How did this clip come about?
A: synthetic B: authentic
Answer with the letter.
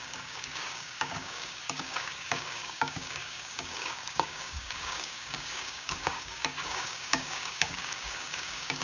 A